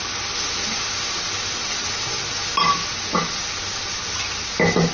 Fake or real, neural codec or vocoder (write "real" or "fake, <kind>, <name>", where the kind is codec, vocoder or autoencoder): real